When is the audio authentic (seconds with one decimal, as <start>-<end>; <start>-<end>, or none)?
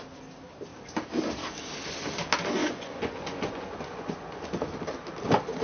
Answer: 0.0-2.6; 4.4-5.6